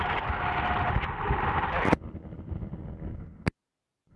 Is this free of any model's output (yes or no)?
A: yes